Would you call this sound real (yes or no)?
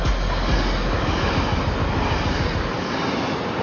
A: yes